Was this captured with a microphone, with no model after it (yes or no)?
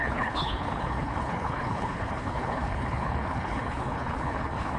no